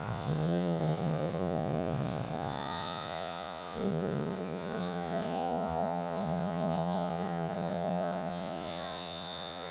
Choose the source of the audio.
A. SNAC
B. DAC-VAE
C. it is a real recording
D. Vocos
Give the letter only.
D